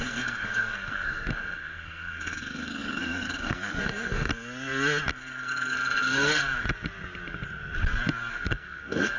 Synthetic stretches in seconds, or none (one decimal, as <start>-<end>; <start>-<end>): 0.0-4.3; 5.1-6.4; 8.3-9.2